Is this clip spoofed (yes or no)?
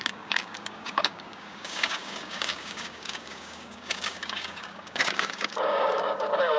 yes